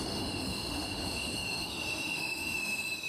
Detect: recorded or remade remade